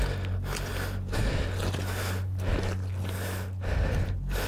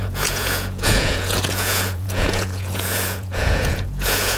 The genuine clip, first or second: first